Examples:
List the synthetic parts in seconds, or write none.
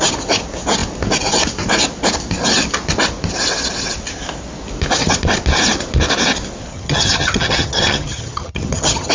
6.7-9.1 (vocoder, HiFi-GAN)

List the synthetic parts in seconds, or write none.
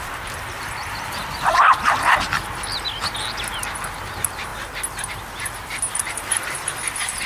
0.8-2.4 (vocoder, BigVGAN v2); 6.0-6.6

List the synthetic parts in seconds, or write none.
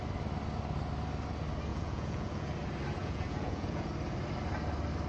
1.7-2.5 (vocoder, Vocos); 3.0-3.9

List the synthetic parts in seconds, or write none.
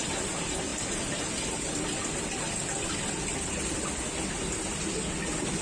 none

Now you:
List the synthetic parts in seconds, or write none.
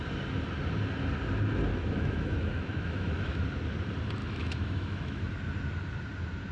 1.7-3.4 (autoencoder, DAC-VAE); 4.2-5.3